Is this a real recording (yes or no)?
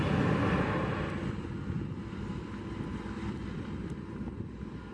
yes